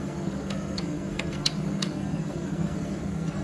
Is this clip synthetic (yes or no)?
yes